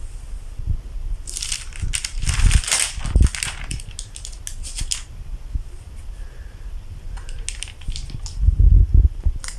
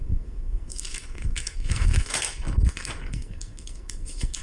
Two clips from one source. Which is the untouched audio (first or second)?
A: first